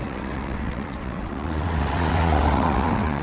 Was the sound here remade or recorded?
remade